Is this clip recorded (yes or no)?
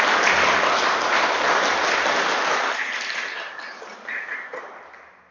yes